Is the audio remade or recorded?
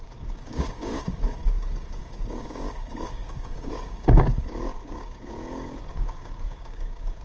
remade